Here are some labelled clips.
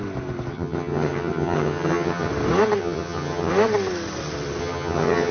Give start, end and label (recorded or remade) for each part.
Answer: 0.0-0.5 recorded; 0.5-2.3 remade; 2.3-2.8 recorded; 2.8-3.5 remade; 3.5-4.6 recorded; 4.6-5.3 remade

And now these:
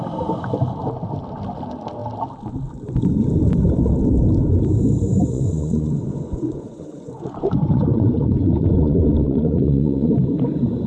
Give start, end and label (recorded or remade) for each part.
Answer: 0.0-5.2 recorded; 5.2-10.1 remade; 10.1-10.9 recorded

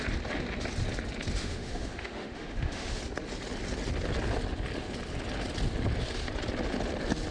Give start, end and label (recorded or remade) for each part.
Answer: 0.0-1.4 recorded; 1.4-3.0 remade; 3.0-7.3 recorded

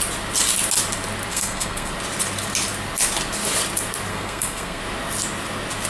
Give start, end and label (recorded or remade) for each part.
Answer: 0.0-1.3 recorded; 1.3-1.9 remade; 1.9-4.1 recorded; 4.1-4.8 remade; 4.8-5.9 recorded

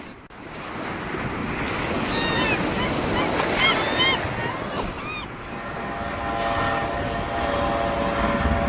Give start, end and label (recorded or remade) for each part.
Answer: 0.0-8.7 recorded

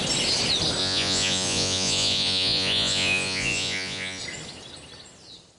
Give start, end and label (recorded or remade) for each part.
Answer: 0.0-0.8 recorded; 0.8-4.2 remade; 4.2-5.6 recorded